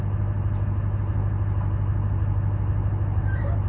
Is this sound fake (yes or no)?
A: no